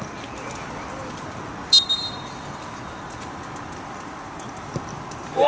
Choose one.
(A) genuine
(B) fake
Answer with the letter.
A